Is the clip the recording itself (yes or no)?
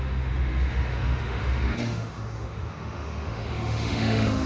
no